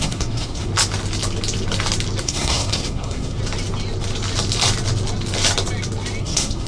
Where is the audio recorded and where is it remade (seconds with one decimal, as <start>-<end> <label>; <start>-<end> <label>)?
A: 0.0-0.7 remade; 0.7-2.2 recorded; 2.2-3.4 remade; 3.4-6.2 recorded; 6.2-6.7 remade